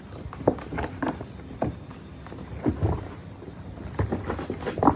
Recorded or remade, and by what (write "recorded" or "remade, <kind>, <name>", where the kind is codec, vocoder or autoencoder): recorded